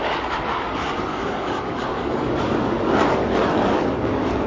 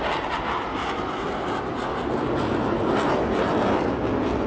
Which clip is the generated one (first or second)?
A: first